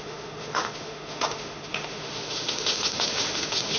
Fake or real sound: fake